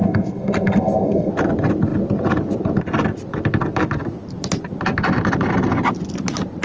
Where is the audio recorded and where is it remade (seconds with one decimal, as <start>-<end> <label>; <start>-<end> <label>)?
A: 0.0-1.3 remade; 1.3-6.6 recorded